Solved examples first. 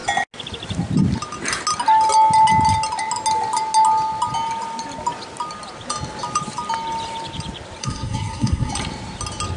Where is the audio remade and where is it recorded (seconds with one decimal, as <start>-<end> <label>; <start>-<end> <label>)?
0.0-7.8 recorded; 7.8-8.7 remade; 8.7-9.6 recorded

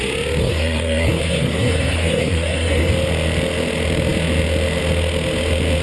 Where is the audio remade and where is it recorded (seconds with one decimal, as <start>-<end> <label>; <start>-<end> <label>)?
0.0-0.4 recorded; 0.4-2.9 remade; 2.9-5.8 recorded

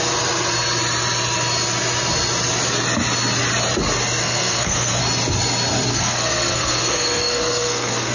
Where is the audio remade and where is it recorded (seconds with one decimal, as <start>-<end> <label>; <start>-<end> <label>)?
0.0-4.2 recorded; 4.2-5.0 remade; 5.0-5.9 recorded; 5.9-8.1 remade

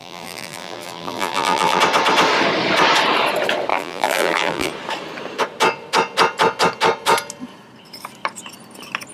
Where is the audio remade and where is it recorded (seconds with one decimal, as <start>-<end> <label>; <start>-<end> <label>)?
0.0-1.8 remade; 1.8-3.7 recorded; 3.7-4.7 remade; 4.7-9.1 recorded

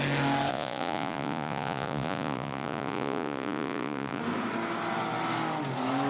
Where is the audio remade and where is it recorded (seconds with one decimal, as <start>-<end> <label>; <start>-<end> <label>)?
0.0-0.5 recorded; 0.5-4.2 remade; 4.2-6.1 recorded

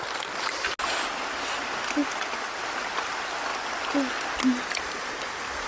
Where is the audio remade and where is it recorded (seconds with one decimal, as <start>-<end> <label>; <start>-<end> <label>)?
0.0-5.7 recorded

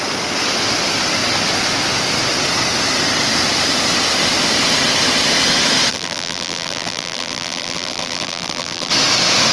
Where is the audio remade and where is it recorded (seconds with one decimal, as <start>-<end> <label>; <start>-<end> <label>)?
0.0-5.9 recorded; 5.9-8.9 remade; 8.9-9.5 recorded

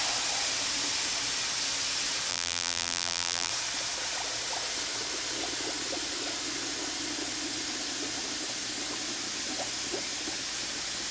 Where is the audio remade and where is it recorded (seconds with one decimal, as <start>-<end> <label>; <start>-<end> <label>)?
0.0-2.3 recorded; 2.3-3.5 remade; 3.5-11.1 recorded